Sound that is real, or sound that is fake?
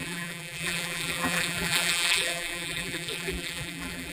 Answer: fake